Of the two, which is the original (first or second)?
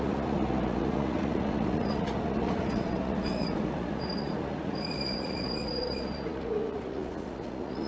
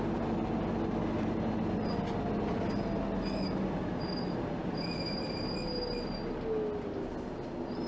second